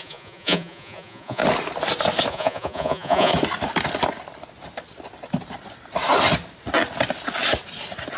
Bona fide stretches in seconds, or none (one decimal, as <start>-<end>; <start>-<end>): 1.4-2.3; 3.3-8.2